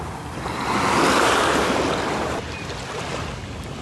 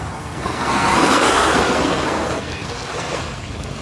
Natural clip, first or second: first